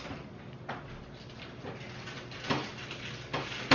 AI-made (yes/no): no